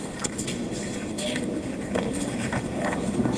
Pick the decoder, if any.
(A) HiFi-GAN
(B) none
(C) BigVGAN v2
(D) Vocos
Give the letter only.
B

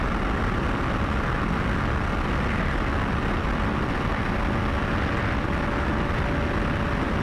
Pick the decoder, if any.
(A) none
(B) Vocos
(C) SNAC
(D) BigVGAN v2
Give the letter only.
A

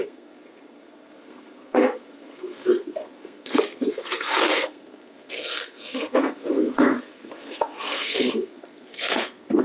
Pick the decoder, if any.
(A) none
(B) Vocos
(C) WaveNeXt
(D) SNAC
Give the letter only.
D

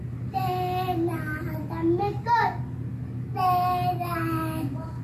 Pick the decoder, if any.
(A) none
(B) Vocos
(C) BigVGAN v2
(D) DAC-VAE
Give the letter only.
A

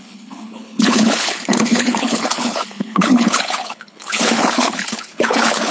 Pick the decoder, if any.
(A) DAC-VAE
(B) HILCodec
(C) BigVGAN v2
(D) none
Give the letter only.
B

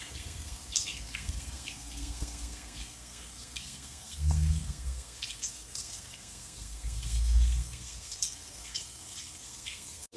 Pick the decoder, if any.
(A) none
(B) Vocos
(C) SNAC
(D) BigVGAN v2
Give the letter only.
C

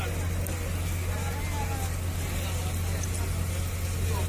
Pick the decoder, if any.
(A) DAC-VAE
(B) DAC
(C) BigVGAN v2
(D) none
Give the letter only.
D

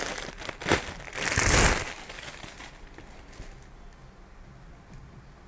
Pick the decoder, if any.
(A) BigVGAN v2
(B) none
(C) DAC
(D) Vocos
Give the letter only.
B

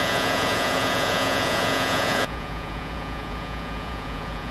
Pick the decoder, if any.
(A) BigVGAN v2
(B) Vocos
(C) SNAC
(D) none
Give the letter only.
B